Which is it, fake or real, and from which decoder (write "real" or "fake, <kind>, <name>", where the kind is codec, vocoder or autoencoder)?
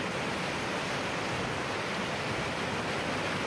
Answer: real